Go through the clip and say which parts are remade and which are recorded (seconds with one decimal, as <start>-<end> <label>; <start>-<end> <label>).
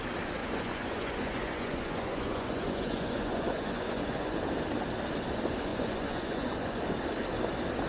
0.0-0.4 recorded; 0.4-4.4 remade; 4.4-5.7 recorded; 5.7-6.8 remade; 6.8-7.9 recorded